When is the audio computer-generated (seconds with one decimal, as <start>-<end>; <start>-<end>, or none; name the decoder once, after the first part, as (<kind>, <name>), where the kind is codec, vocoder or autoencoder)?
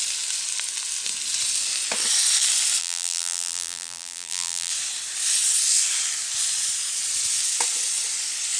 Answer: 2.8-4.7 (vocoder, BigVGAN v2)